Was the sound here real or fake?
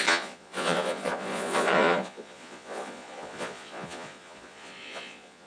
fake